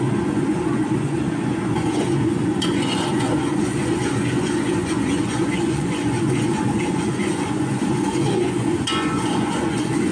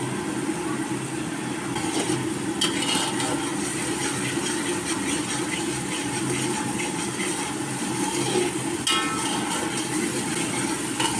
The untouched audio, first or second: second